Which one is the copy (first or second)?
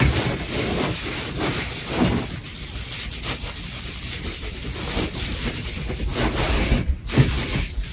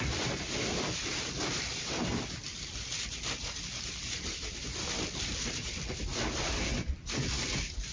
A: second